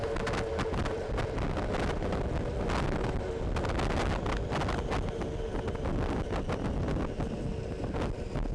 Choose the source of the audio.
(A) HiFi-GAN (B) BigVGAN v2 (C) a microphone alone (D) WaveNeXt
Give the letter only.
C